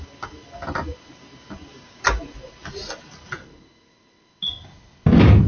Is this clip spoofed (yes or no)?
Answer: no